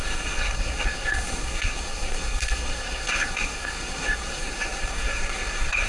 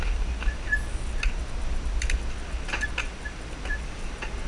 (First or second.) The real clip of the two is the second